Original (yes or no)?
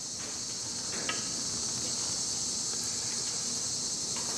yes